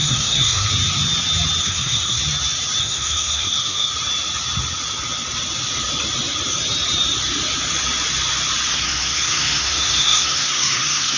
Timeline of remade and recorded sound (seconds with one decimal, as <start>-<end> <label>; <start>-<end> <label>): 0.0-0.7 remade; 0.7-1.6 recorded; 1.6-2.2 remade; 2.2-2.8 recorded; 2.8-3.9 remade; 3.9-8.7 recorded; 8.7-11.2 remade